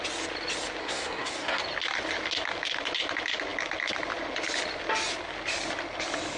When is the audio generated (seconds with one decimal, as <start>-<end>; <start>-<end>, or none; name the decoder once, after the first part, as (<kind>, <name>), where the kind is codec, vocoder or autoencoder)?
0.8-1.6 (codec, SNAC)